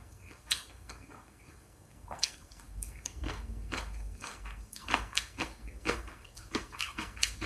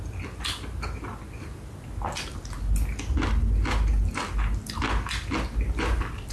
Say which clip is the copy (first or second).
first